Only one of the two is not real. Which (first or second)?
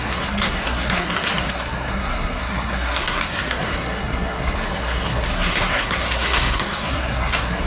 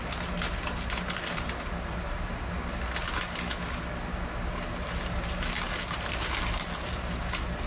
first